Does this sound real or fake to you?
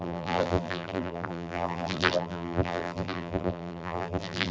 fake